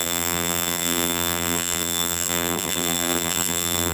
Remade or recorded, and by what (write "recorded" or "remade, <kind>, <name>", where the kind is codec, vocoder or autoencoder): remade, vocoder, BigVGAN v2